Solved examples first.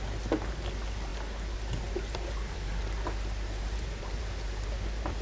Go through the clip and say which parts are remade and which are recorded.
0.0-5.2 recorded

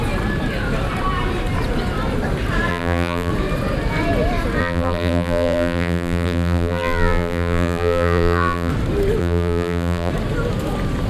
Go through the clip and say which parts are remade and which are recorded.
0.0-2.7 recorded; 2.7-3.3 remade; 3.3-4.6 recorded; 4.6-8.7 remade; 8.7-9.2 recorded; 9.2-10.1 remade; 10.1-11.1 recorded

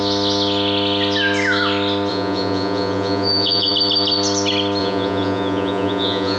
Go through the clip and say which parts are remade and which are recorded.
0.0-2.1 recorded; 2.1-3.7 remade; 3.7-4.8 recorded; 4.8-6.4 remade

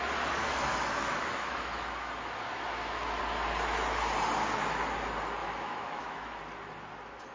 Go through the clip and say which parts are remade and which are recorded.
0.0-0.4 recorded; 0.4-3.2 remade; 3.2-5.4 recorded; 5.4-6.4 remade; 6.4-7.3 recorded